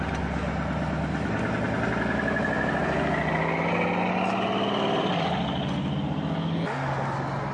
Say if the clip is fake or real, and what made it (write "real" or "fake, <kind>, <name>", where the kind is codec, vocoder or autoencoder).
real